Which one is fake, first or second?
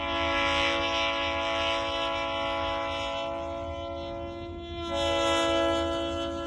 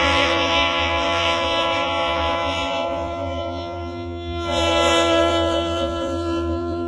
second